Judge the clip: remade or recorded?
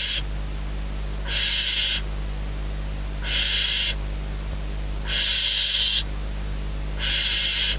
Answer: recorded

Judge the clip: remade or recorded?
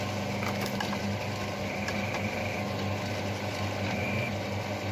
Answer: recorded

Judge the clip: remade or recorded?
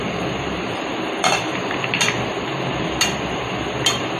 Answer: recorded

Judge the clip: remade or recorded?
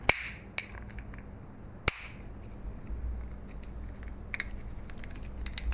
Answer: recorded